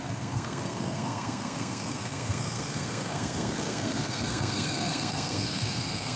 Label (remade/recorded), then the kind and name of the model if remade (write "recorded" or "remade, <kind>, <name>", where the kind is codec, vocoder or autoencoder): remade, codec, SNAC